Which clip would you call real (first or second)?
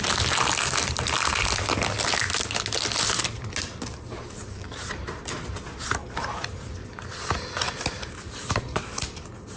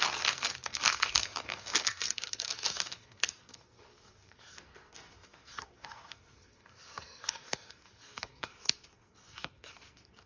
first